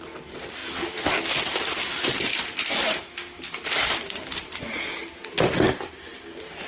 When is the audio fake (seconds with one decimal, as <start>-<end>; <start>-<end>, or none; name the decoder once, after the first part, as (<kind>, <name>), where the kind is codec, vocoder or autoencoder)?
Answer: none